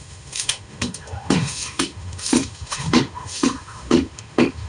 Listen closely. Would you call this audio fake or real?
fake